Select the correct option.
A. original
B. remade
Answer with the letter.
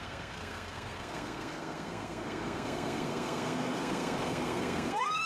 B